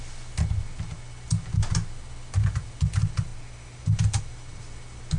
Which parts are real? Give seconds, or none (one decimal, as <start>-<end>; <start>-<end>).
0.0-5.2